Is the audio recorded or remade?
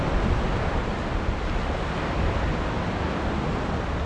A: recorded